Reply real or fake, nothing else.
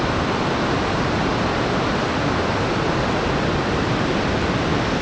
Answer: real